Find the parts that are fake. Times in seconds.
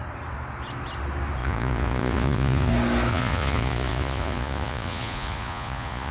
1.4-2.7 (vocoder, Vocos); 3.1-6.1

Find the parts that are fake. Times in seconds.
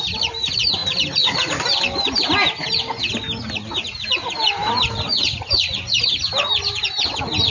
none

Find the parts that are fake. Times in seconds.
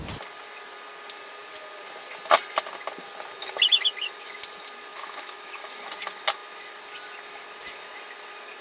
4.9-5.7 (autoencoder, DAC-VAE)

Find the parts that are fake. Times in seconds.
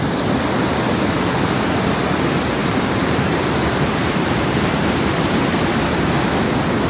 2.6-5.8 (vocoder, BigVGAN v2)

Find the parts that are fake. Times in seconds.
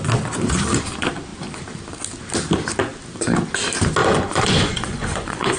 4.0-5.6 (vocoder, Vocos)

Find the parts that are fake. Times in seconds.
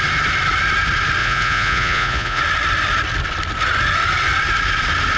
1.2-2.4 (vocoder, Vocos)